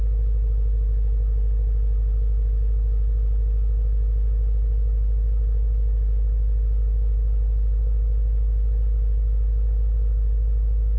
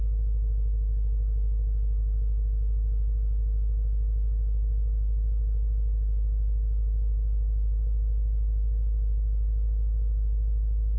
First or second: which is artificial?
second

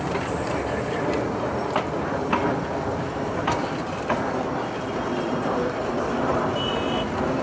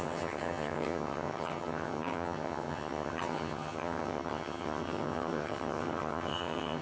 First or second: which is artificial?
second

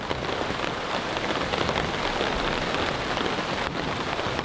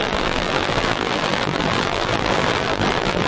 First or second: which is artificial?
second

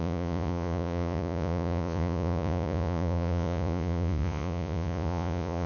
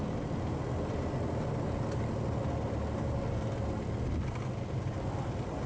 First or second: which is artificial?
first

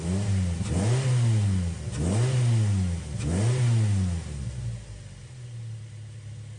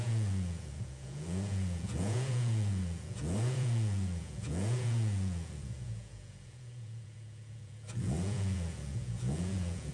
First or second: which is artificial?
second